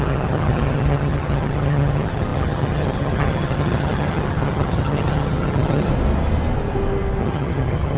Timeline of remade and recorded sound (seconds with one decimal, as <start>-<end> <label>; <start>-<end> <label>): 0.0-5.9 remade; 5.9-7.2 recorded; 7.2-8.0 remade